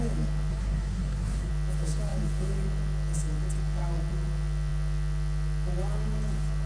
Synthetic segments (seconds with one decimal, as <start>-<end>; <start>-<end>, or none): 0.5-1.5